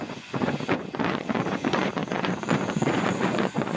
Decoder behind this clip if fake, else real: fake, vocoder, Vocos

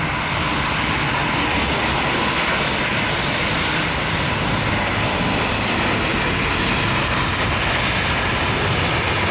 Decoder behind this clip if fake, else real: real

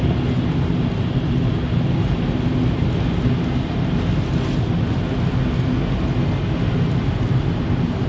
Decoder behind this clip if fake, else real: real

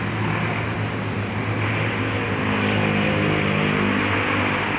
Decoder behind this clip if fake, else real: real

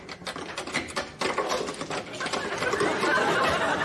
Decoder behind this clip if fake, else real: real